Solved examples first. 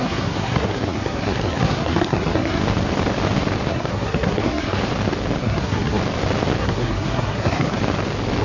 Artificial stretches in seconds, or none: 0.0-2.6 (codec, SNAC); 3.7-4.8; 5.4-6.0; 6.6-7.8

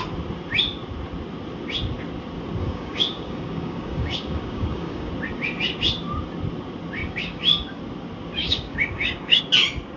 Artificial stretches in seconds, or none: 2.6-5.1 (codec, DAC); 7.0-7.8; 8.4-9.4

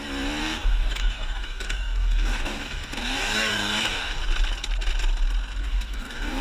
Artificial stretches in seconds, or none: 0.4-4.2 (codec, DAC); 5.6-6.4

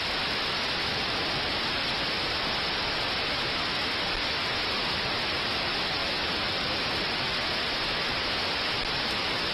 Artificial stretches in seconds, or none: 6.0-6.9 (vocoder, BigVGAN v2)

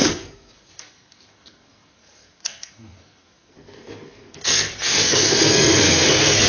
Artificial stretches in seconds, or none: 0.0-6.5 (codec, SNAC)

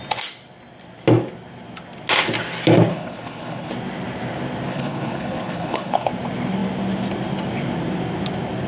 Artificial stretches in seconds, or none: 2.9-3.7 (codec, HILCodec); 4.7-6.1